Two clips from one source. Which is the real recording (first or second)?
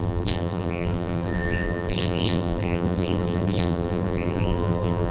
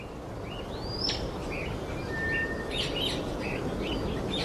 second